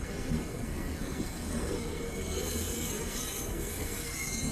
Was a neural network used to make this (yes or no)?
yes